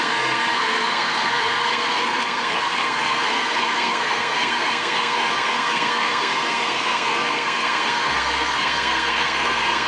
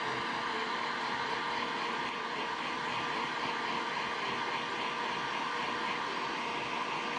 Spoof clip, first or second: first